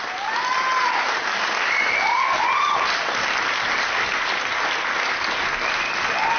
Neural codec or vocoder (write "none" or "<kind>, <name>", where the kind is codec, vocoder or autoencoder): none